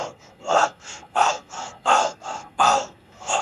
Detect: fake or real fake